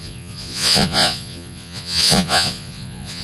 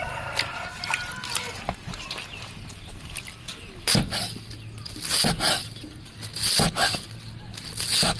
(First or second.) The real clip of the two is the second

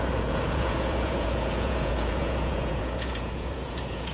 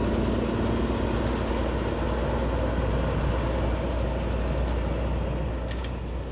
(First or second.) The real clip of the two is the second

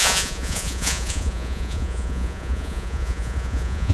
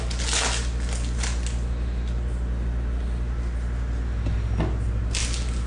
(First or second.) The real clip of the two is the second